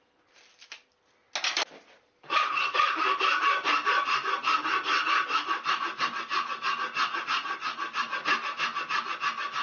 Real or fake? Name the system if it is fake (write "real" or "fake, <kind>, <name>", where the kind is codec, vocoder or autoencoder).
real